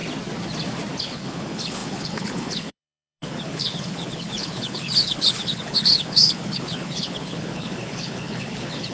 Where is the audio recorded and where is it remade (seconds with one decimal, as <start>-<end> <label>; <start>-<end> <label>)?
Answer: 0.0-1.0 recorded; 1.0-8.9 remade